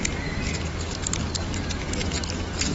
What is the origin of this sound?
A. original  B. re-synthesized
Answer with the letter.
B